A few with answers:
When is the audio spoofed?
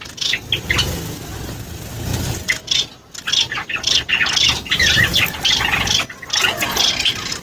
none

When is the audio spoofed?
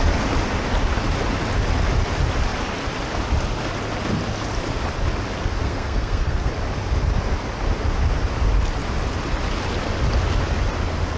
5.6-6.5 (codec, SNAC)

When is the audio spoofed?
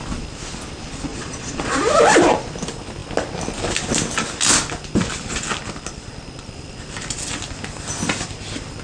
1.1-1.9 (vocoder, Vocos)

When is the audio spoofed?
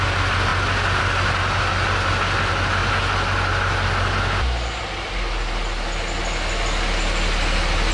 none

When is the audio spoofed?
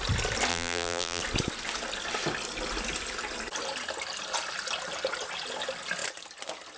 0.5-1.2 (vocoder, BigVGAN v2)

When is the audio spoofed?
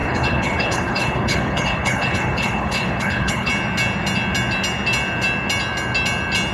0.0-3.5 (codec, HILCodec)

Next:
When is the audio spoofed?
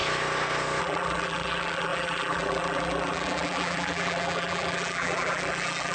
0.8-5.9 (vocoder, BigVGAN v2)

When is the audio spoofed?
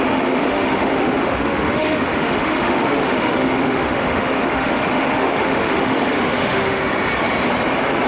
0.0-6.8 (autoencoder, DAC-VAE)